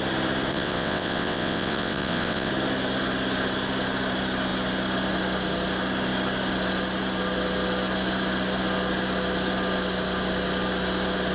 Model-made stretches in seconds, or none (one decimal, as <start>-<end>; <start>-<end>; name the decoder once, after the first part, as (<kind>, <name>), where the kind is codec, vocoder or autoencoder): 0.5-2.5 (vocoder, WaveNeXt)

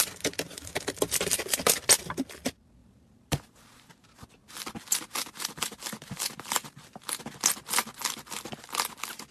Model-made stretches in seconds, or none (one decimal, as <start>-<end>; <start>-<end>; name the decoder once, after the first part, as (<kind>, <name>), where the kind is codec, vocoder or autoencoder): 2.8-4.5 (vocoder, BigVGAN v2); 5.2-7.2